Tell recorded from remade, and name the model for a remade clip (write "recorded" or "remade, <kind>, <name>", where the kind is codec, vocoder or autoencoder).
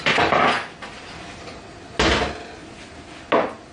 recorded